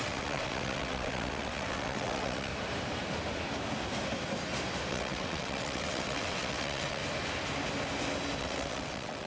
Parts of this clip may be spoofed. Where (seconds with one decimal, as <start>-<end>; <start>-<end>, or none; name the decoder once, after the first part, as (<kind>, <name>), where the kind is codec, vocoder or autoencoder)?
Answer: 0.0-2.5 (vocoder, WaveNeXt); 4.9-7.0; 8.4-9.3